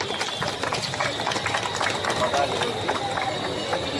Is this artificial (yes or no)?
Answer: no